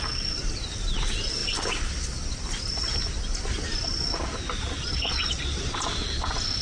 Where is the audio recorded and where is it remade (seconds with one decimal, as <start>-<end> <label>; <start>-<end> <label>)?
0.0-6.6 recorded